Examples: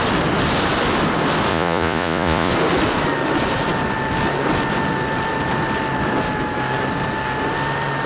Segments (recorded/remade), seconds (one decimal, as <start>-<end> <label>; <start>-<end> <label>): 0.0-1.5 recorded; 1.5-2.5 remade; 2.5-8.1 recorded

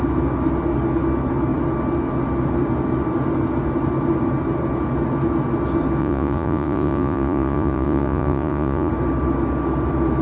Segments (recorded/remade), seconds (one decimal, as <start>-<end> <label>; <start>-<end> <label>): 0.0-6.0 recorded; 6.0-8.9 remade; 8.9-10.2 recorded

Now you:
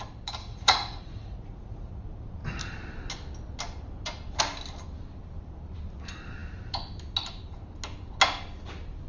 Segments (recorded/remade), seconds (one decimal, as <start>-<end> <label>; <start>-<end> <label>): 0.0-0.5 recorded; 0.5-1.9 remade; 1.9-9.1 recorded

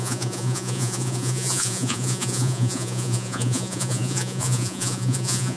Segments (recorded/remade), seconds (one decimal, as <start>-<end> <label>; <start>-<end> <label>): 0.0-5.6 remade

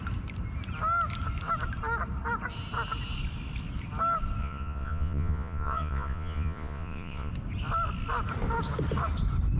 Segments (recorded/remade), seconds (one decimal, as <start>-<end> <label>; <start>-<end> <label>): 0.0-4.4 recorded; 4.4-7.3 remade; 7.3-9.6 recorded